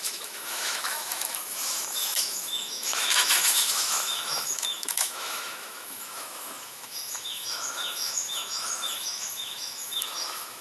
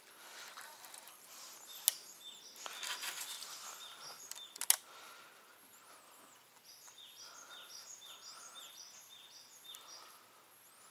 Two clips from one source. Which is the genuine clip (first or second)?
second